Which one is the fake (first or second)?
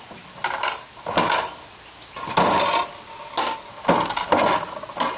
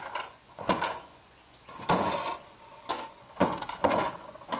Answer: second